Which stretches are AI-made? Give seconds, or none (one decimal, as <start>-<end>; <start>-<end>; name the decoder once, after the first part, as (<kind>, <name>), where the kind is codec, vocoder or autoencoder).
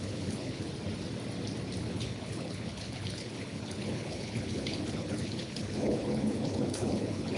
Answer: 0.0-0.7 (codec, HILCodec); 1.8-7.4